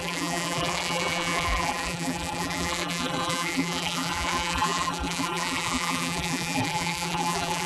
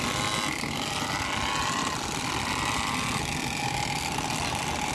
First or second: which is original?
second